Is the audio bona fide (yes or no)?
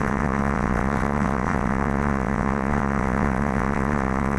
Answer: no